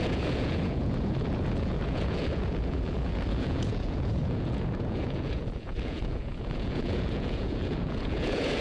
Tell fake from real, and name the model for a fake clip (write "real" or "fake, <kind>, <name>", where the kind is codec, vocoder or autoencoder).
fake, vocoder, Vocos